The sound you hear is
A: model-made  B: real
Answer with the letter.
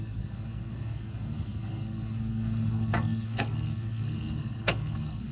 A